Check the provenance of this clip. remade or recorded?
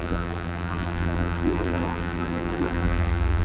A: remade